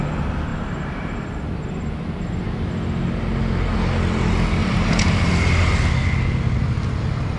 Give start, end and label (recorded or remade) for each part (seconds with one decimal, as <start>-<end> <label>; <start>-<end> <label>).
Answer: 0.0-0.5 recorded; 0.5-2.4 remade; 2.4-4.6 recorded; 4.6-5.3 remade; 5.3-7.4 recorded